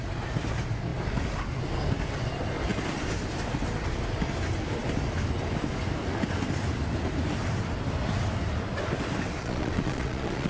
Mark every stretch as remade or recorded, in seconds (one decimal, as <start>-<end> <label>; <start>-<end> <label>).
0.0-9.4 recorded; 9.4-10.5 remade